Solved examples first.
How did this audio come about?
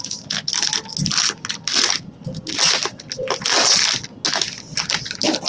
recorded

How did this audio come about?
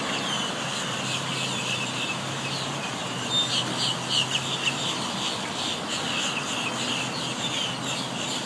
recorded